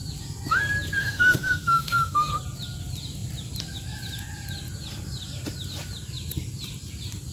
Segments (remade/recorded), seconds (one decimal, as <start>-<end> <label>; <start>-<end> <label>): 0.0-1.0 recorded; 1.0-2.3 remade; 2.3-7.3 recorded